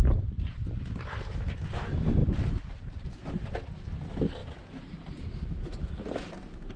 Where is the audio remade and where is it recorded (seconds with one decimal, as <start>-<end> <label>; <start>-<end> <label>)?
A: 0.0-2.2 recorded; 2.2-3.3 remade; 3.3-4.4 recorded; 4.4-5.8 remade; 5.8-6.8 recorded